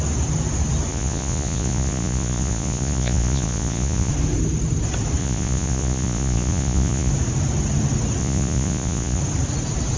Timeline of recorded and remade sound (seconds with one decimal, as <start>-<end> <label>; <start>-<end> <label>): 0.0-0.9 recorded; 0.9-4.1 remade; 4.1-5.2 recorded; 5.2-7.1 remade; 7.1-8.2 recorded; 8.2-9.2 remade; 9.2-10.0 recorded